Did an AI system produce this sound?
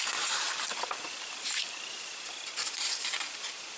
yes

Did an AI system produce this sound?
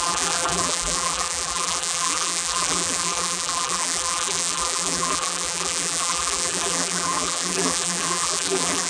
yes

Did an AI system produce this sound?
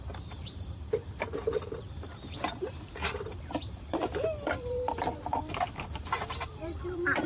yes